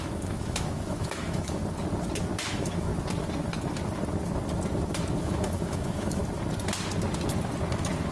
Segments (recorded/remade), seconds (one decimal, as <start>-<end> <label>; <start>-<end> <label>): 0.0-1.6 remade; 1.6-2.5 recorded; 2.5-2.9 remade; 2.9-5.2 recorded; 5.2-6.2 remade; 6.2-8.1 recorded